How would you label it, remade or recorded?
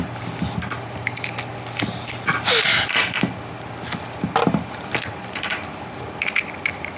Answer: recorded